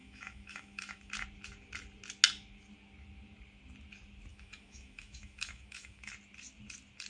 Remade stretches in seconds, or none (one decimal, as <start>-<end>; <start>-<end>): 0.0-1.1; 4.3-6.1